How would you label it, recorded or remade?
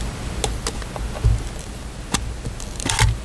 recorded